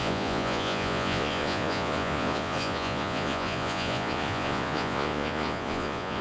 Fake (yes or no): yes